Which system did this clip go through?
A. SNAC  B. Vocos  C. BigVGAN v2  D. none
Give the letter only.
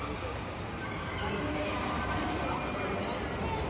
D